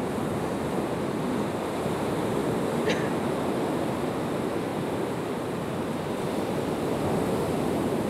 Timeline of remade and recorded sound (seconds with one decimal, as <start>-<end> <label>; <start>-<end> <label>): 0.0-8.1 recorded